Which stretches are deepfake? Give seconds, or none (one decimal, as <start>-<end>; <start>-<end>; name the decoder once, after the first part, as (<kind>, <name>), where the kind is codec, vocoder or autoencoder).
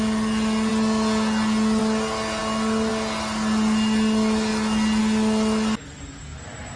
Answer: none